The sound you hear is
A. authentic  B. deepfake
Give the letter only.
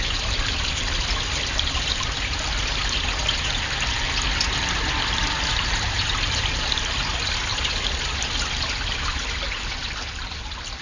A